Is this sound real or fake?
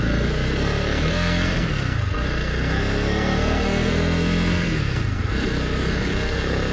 fake